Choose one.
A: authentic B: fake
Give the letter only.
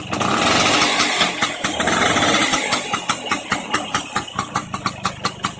A